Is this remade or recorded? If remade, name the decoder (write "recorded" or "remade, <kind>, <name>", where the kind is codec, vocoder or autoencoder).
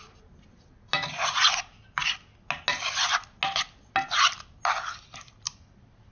recorded